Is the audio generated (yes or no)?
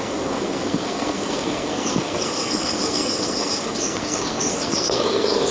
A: yes